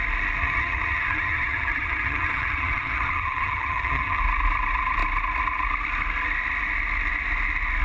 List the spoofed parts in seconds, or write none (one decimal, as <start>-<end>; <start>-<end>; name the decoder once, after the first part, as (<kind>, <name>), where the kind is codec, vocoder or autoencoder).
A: 0.4-4.2 (vocoder, HiFi-GAN)